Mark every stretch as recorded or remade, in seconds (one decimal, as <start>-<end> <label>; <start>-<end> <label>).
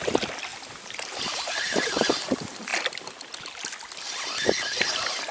0.0-0.5 recorded; 0.5-2.0 remade; 2.0-5.3 recorded